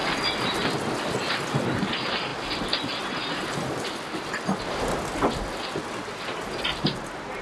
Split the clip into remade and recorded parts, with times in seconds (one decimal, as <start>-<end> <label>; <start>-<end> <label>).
0.0-7.4 recorded